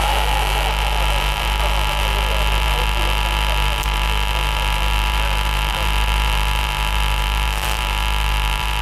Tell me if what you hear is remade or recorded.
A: remade